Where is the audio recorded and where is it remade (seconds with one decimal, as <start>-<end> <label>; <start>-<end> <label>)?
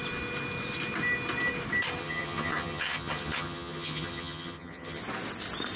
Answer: 0.0-2.0 recorded; 2.0-5.0 remade; 5.0-5.8 recorded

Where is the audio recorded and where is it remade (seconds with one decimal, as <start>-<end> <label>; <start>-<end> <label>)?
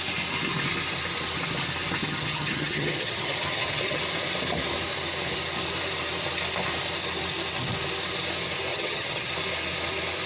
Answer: 0.0-2.0 recorded; 2.0-4.0 remade; 4.0-8.7 recorded; 8.7-9.3 remade; 9.3-10.3 recorded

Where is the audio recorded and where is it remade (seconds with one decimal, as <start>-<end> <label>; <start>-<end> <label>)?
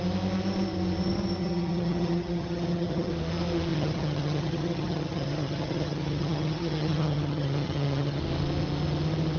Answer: 0.0-1.4 recorded; 1.4-3.1 remade; 3.1-3.7 recorded; 3.7-8.2 remade; 8.2-9.4 recorded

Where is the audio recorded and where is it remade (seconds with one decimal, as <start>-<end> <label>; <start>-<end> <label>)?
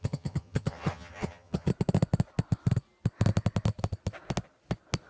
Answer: 0.0-1.7 remade; 1.7-5.1 recorded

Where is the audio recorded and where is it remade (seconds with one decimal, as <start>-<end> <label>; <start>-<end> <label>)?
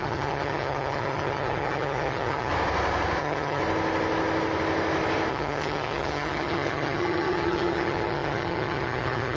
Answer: 0.0-2.5 remade; 2.5-3.2 recorded; 3.2-3.6 remade; 3.6-5.3 recorded; 5.3-9.4 remade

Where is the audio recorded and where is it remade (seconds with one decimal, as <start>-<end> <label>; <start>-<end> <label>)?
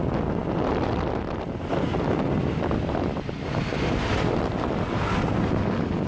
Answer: 0.0-6.1 recorded